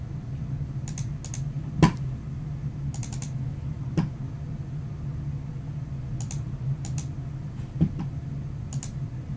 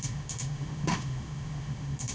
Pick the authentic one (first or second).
first